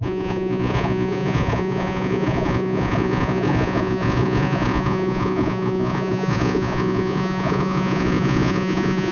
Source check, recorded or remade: remade